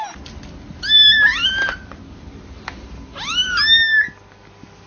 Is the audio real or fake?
real